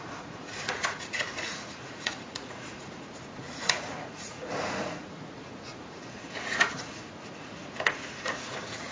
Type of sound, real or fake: fake